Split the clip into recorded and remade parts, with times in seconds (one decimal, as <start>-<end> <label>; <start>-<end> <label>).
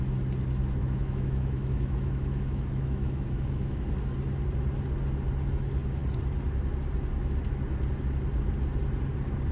0.0-0.8 recorded; 0.8-3.9 remade; 3.9-9.5 recorded